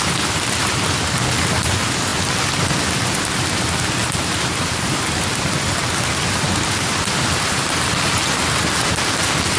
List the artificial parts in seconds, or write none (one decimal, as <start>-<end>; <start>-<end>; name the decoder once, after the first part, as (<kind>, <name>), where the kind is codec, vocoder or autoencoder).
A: 4.0-5.0 (vocoder, BigVGAN v2)